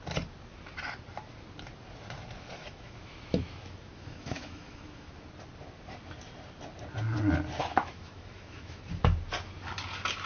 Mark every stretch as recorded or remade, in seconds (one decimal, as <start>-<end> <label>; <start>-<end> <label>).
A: 0.0-2.6 recorded; 2.6-5.1 remade; 5.1-7.6 recorded; 7.6-8.8 remade; 8.8-10.3 recorded